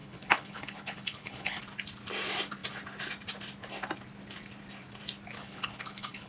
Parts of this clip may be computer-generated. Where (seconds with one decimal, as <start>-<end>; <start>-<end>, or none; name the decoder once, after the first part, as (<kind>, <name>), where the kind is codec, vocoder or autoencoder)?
0.0-1.6 (codec, HILCodec); 5.4-6.3

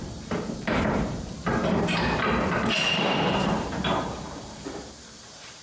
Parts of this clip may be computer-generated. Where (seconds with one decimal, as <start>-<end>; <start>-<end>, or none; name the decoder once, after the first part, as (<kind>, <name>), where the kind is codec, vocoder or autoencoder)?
0.0-5.6 (vocoder, BigVGAN v2)

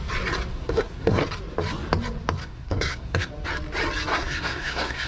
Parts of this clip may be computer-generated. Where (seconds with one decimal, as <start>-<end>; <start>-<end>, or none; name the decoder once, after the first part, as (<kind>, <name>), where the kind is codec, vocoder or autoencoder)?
0.5-1.2 (codec, SNAC); 2.4-3.3; 4.1-5.1

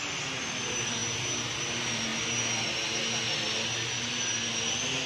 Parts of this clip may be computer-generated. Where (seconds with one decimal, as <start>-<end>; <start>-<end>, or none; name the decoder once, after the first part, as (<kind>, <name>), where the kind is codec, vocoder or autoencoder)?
none

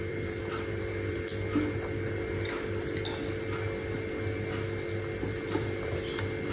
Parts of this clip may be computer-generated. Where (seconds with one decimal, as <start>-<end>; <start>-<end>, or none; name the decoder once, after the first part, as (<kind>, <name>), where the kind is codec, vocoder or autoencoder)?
0.0-1.3 (vocoder, BigVGAN v2); 5.2-6.5

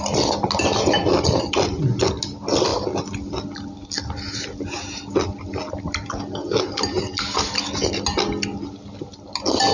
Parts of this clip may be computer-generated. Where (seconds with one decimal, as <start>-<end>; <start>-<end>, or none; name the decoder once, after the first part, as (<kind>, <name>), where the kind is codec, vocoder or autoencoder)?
none

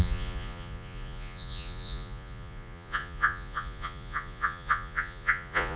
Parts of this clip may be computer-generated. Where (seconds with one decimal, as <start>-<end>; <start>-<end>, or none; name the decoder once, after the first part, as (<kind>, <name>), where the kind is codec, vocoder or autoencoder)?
0.0-5.8 (vocoder, Vocos)